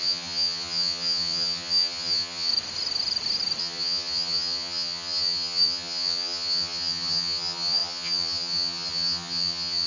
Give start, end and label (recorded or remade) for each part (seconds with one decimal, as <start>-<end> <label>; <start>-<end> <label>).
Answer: 0.0-2.5 remade; 2.5-3.6 recorded; 3.6-9.9 remade